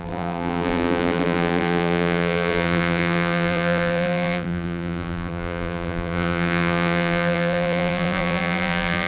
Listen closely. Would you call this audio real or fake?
fake